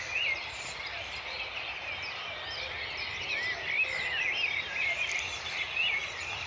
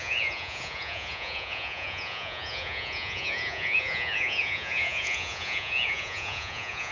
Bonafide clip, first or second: first